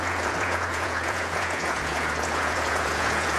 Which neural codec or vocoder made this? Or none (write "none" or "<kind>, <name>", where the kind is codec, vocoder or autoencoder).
vocoder, Vocos